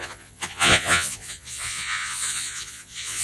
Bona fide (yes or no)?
no